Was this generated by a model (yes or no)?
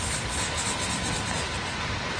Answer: no